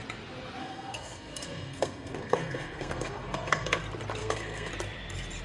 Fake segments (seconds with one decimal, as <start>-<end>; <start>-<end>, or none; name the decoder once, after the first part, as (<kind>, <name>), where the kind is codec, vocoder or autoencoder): 0.6-3.8 (codec, SNAC); 4.2-4.7